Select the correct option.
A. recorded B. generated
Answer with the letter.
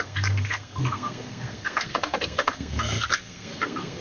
B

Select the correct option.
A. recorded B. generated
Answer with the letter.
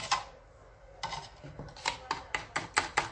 A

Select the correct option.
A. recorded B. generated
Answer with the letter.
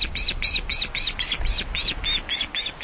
A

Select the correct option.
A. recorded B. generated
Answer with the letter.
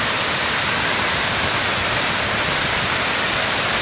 A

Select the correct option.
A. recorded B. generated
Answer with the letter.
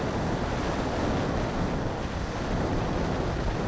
A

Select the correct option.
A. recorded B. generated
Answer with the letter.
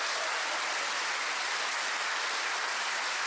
A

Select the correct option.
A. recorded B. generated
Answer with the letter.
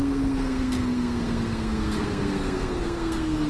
B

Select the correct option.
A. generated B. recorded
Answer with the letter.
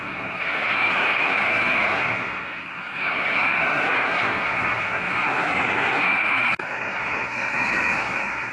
A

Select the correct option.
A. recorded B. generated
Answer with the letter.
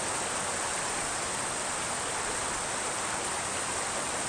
A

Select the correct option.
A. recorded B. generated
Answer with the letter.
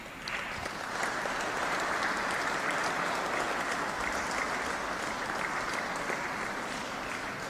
A